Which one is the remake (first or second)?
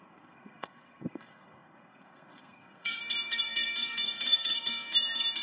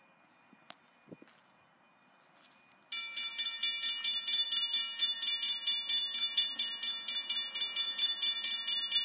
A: first